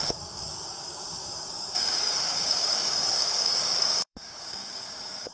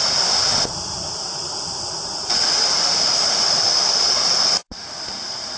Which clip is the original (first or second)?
second